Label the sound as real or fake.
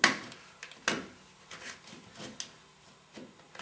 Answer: real